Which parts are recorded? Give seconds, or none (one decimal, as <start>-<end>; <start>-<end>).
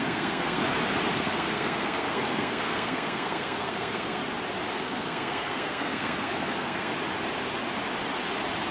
0.6-1.2; 4.2-4.7; 6.9-8.7